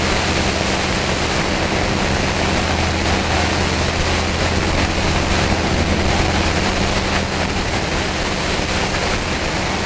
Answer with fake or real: real